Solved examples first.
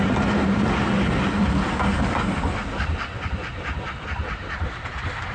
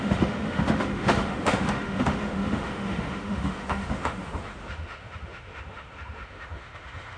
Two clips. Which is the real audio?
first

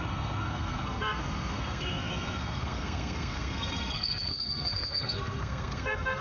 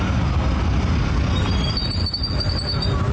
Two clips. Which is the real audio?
second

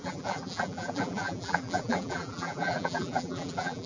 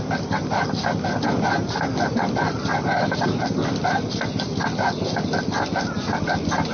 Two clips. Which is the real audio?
second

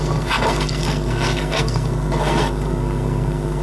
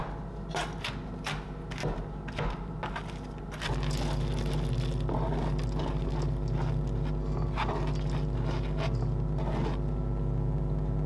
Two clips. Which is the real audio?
second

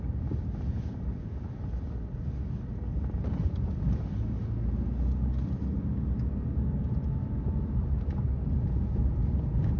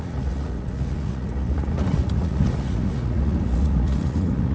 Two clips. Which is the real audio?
first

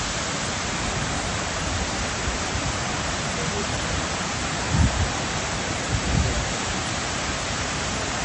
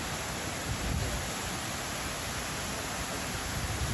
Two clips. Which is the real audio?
second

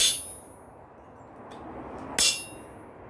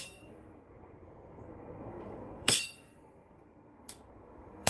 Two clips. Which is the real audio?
first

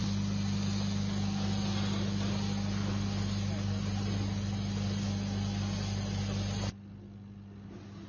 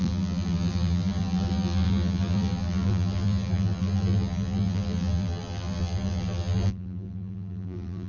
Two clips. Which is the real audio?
first